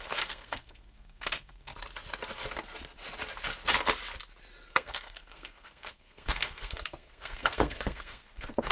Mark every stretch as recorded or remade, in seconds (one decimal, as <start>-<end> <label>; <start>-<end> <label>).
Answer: 0.0-1.7 remade; 1.7-4.7 recorded; 4.7-8.7 remade